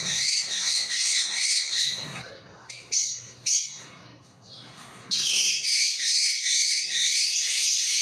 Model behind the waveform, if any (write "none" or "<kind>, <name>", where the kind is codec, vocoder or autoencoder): codec, SNAC